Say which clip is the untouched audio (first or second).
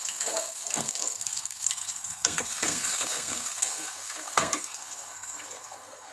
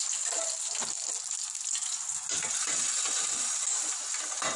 second